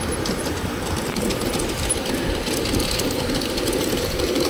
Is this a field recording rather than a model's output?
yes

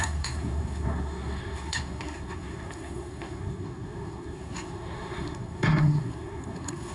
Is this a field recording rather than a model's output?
no